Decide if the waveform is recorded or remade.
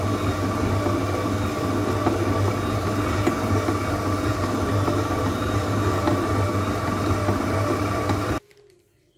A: recorded